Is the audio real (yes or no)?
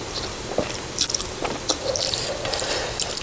no